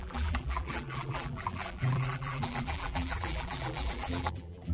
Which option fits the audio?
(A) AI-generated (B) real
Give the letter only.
A